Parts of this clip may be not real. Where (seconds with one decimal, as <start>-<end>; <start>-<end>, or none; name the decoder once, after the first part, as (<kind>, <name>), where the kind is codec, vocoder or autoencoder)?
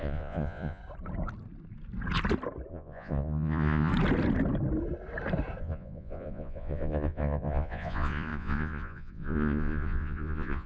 0.0-0.8 (vocoder, Vocos); 2.7-3.9; 5.6-10.7